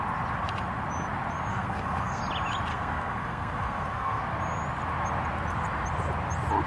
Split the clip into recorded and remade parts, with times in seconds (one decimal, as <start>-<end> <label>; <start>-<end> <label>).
0.0-1.5 recorded; 1.5-2.2 remade; 2.2-2.7 recorded; 2.7-4.2 remade; 4.2-6.7 recorded